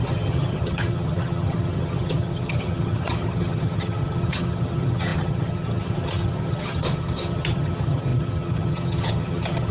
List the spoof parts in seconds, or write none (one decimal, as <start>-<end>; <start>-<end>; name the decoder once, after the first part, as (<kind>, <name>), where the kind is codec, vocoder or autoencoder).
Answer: 0.0-9.7 (vocoder, HiFi-GAN)